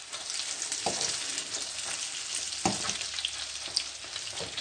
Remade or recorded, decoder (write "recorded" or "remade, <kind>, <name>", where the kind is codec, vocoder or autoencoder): recorded